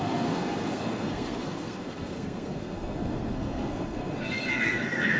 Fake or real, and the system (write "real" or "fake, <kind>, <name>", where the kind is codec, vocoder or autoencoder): fake, codec, SNAC